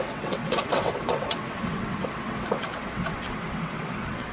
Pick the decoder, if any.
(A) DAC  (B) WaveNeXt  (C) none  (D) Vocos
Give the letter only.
B